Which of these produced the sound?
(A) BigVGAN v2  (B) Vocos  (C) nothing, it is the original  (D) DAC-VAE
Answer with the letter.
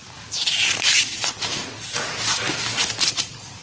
C